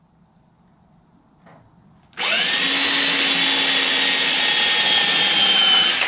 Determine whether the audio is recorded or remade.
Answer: recorded